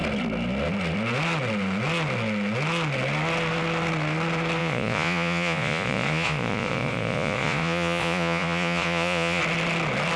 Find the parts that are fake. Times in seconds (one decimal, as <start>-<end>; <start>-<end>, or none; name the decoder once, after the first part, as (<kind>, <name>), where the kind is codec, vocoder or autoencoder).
4.6-9.4 (vocoder, Vocos)